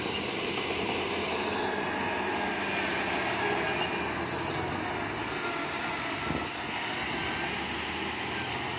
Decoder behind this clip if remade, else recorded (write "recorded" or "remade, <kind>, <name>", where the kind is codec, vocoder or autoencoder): recorded